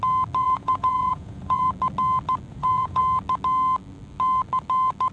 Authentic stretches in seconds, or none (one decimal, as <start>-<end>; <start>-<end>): 0.0-0.4; 1.7-2.5; 3.0-5.1